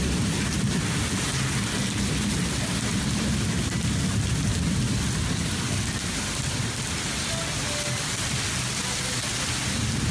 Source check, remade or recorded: recorded